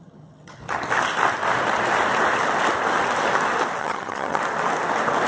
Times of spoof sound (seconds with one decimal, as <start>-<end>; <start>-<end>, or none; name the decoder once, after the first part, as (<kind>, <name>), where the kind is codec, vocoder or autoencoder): 0.0-0.6 (vocoder, HiFi-GAN); 3.8-4.4

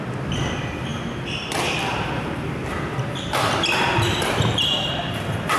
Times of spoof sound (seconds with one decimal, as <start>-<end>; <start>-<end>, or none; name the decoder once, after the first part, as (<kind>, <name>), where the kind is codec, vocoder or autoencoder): none